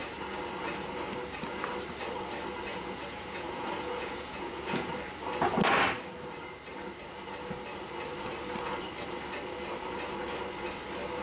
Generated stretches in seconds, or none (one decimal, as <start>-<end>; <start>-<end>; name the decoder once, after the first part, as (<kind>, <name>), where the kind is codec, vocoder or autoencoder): 2.7-4.9 (vocoder, Vocos)